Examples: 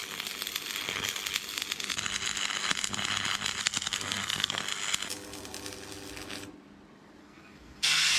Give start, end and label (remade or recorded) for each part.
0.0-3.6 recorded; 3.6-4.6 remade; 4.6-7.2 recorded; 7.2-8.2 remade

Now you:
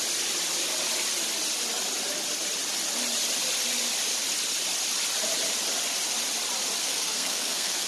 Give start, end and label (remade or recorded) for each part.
0.0-6.8 recorded; 6.8-7.9 remade

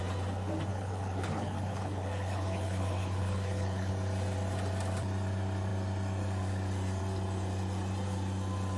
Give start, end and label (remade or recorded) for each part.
0.0-0.7 recorded; 0.7-3.9 remade; 3.9-8.8 recorded

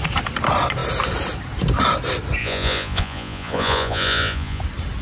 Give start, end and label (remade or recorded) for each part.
0.0-2.4 recorded; 2.4-4.6 remade; 4.6-5.0 recorded

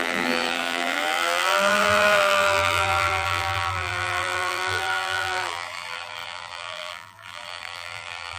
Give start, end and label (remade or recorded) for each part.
0.0-8.4 remade

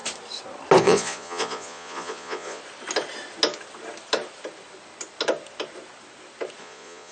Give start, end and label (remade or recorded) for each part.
0.0-0.8 recorded; 0.8-2.6 remade; 2.6-6.6 recorded; 6.6-7.1 remade

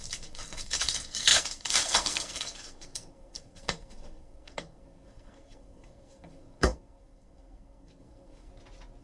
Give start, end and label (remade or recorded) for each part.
0.0-8.5 remade; 8.5-9.0 recorded

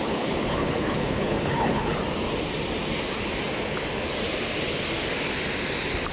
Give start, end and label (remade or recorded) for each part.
0.0-2.0 remade; 2.0-6.1 recorded